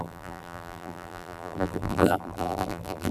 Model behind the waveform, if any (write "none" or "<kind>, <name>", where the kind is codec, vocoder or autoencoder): vocoder, BigVGAN v2